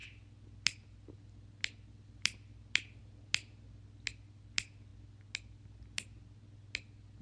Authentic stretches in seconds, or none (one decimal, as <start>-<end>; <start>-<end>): 0.0-7.2